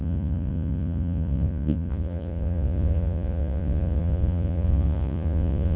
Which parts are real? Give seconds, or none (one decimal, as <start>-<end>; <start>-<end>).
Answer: none